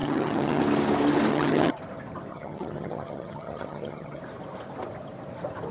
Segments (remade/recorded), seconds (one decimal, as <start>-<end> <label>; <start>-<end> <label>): 0.0-0.6 remade; 0.6-1.3 recorded; 1.3-1.8 remade; 1.8-2.3 recorded; 2.3-4.2 remade; 4.2-5.7 recorded